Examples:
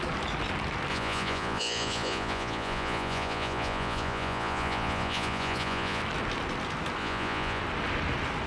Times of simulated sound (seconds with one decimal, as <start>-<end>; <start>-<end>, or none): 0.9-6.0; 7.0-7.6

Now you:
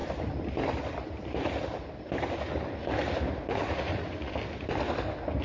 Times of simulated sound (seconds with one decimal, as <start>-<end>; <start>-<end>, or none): 3.6-4.3

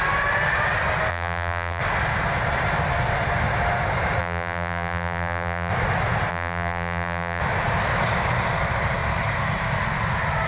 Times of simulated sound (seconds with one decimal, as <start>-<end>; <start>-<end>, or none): 1.1-1.8; 4.2-5.7; 6.3-7.4

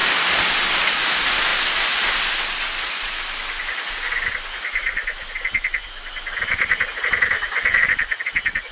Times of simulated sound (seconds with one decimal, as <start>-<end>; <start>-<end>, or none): none

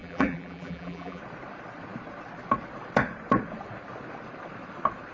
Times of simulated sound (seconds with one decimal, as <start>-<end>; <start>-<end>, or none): 0.0-1.2

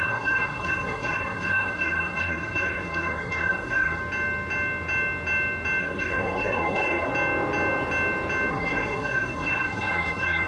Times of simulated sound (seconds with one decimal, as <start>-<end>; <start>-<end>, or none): 0.0-4.0; 5.8-7.1; 8.5-10.5

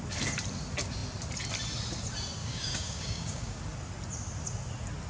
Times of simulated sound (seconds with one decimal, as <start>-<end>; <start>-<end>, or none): 2.4-3.6

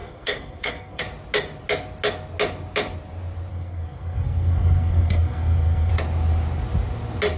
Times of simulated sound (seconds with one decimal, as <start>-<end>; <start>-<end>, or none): 0.0-1.0; 3.5-5.9